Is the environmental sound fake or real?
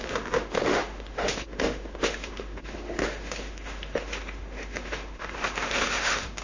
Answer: fake